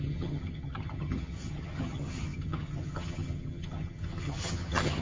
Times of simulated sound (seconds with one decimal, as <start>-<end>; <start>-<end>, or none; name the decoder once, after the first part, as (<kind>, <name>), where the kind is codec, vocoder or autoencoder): 0.0-5.0 (vocoder, HiFi-GAN)

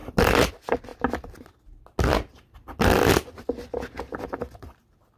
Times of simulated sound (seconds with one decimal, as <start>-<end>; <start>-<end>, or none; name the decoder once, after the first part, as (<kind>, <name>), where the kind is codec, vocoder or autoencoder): none